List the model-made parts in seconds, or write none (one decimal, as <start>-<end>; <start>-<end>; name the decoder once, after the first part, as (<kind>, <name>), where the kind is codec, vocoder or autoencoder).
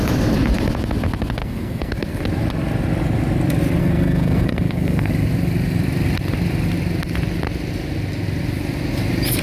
1.4-2.2 (codec, SNAC); 3.8-5.1